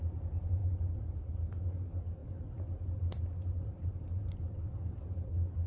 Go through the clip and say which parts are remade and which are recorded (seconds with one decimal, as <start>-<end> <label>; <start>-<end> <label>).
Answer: 0.0-2.2 recorded; 2.2-4.4 remade; 4.4-5.7 recorded